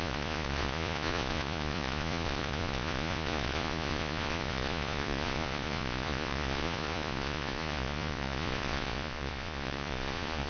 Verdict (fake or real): fake